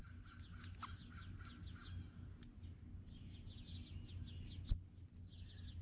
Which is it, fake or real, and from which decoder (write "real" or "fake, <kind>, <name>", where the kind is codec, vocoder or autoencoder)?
real